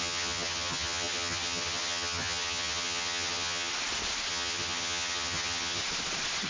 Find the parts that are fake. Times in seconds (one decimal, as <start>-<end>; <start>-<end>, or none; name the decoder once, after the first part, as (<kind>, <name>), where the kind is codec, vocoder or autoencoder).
0.0-3.7 (vocoder, HiFi-GAN); 4.3-5.8